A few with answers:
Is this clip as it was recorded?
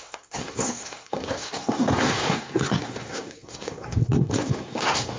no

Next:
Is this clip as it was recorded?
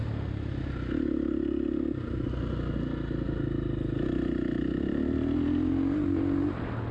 yes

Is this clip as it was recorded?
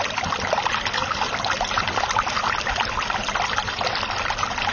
yes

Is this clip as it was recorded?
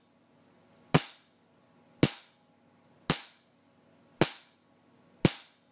yes